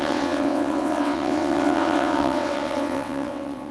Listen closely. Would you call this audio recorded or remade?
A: remade